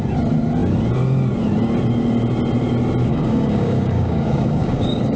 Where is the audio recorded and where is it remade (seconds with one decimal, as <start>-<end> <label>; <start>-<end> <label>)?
0.0-3.1 recorded; 3.1-5.2 remade